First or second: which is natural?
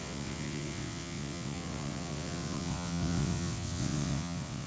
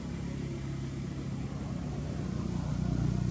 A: second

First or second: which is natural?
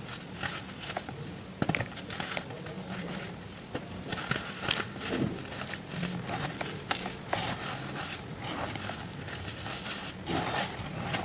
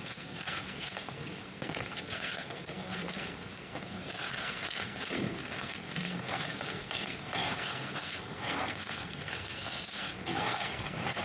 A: first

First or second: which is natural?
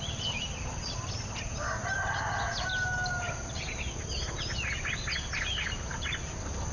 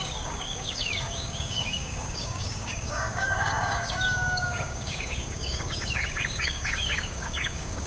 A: first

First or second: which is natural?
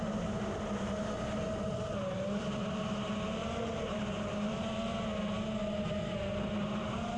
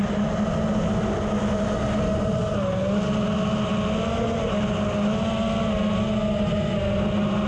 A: second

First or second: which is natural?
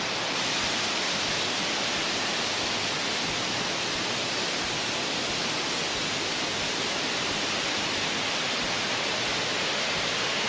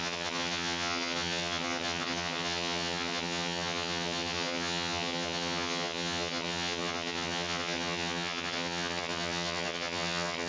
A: first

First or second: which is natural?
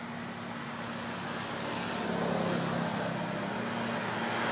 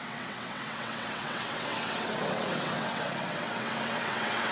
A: first